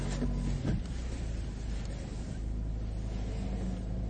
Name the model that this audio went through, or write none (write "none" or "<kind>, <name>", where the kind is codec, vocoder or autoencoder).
none